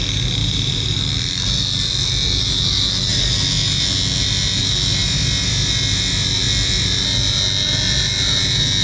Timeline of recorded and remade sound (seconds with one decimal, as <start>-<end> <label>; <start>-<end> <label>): 0.0-0.4 recorded; 0.4-1.0 remade; 1.0-8.8 recorded